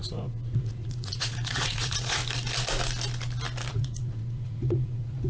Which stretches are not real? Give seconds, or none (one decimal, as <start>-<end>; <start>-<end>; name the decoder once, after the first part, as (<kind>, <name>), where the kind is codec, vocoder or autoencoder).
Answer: 0.0-2.2 (vocoder, Vocos); 3.7-5.3